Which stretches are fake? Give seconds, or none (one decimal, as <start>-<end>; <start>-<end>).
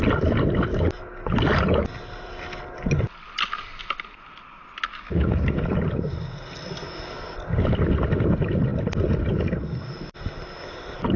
4.9-5.6